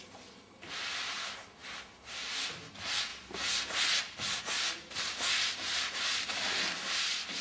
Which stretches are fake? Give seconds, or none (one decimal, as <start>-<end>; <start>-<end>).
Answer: none